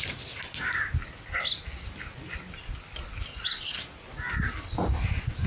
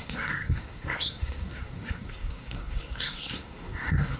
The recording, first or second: first